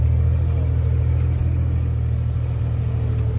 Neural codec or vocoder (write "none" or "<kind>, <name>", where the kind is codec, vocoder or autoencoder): none